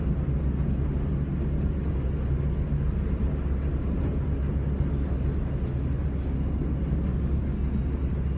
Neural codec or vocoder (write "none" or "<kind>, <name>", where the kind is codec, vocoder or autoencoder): none